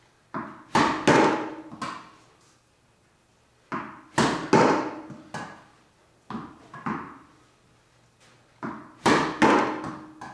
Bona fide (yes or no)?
yes